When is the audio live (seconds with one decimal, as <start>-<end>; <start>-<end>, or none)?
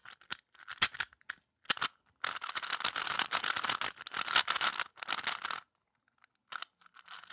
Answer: 0.0-7.3